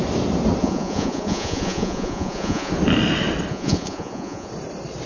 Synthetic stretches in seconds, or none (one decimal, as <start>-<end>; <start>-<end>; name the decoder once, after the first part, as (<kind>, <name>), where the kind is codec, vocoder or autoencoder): 0.6-2.7 (vocoder, Vocos); 3.5-4.5